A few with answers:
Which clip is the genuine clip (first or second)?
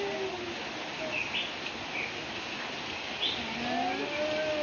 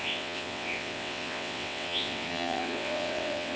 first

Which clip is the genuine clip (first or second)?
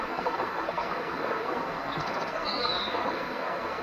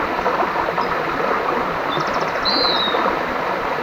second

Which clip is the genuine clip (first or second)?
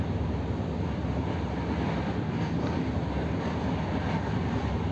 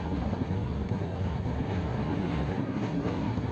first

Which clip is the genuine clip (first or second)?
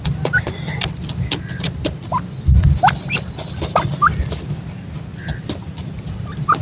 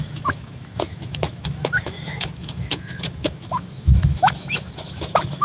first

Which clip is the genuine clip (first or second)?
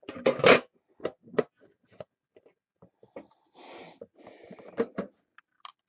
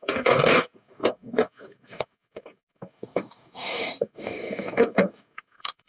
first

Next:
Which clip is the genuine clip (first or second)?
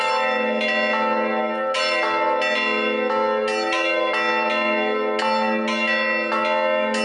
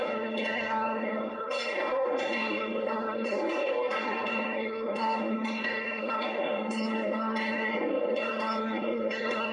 first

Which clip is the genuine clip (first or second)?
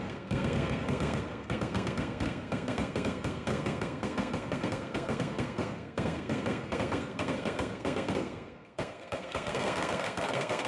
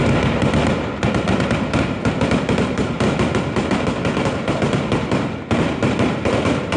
second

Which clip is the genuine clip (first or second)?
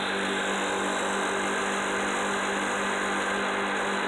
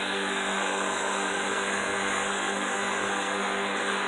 first